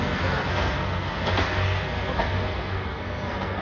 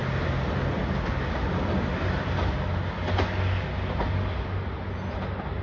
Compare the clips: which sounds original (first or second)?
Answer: second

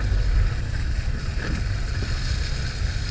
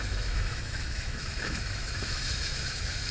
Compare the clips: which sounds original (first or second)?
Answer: first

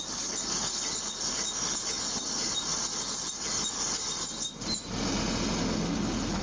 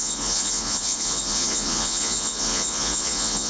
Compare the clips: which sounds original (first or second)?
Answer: first